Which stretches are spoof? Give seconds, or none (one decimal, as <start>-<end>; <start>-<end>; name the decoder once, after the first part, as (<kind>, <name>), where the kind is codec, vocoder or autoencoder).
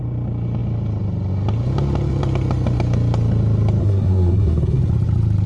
3.8-4.8 (codec, SNAC)